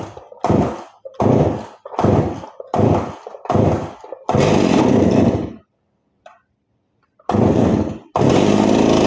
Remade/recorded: recorded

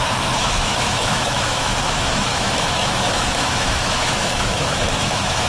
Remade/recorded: remade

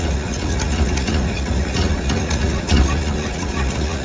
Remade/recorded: remade